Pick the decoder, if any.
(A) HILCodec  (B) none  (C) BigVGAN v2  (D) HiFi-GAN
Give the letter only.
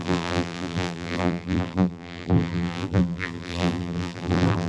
C